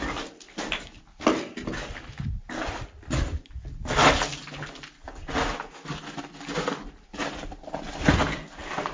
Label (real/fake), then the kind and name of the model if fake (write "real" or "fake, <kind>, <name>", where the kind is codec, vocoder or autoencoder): real